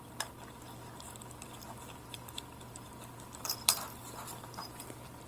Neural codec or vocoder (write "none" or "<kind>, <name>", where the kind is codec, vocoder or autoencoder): vocoder, BigVGAN v2